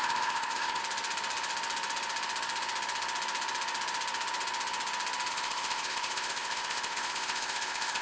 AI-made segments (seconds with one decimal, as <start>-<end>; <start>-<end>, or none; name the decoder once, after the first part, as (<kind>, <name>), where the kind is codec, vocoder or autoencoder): 0.0-0.8 (codec, ZipCodec); 5.3-8.0